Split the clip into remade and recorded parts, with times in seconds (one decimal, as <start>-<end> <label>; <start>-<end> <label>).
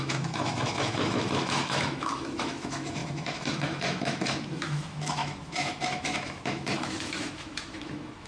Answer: 0.0-8.3 remade